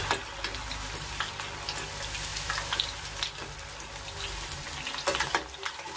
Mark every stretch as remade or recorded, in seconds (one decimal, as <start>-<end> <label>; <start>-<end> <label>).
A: 0.0-6.0 recorded